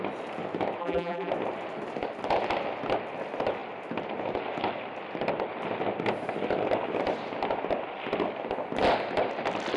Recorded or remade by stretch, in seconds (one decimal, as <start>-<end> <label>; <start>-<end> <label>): 0.0-0.8 recorded; 0.8-1.3 remade; 1.3-9.8 recorded